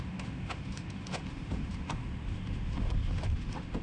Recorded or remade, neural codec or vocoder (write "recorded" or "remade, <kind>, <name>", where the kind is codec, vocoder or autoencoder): remade, autoencoder, DAC-VAE